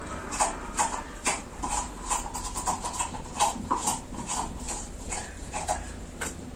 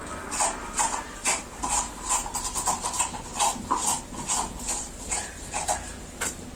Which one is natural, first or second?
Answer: second